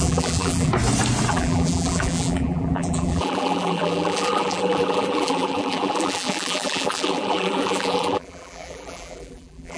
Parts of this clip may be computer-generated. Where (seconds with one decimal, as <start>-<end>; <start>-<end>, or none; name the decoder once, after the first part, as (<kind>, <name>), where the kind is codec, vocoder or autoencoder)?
0.0-0.7 (vocoder, BigVGAN v2); 1.3-9.8